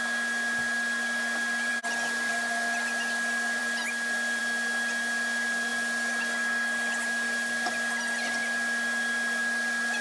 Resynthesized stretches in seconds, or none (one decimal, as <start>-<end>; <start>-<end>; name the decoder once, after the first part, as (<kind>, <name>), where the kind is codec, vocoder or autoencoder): none